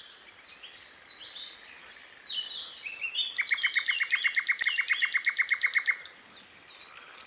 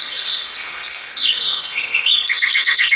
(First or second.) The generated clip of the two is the second